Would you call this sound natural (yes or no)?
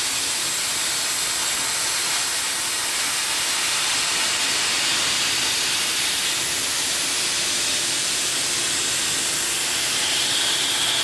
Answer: yes